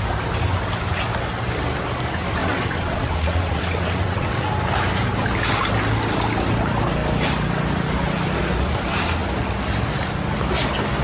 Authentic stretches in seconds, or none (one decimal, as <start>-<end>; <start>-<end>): 0.0-2.4; 4.5-11.0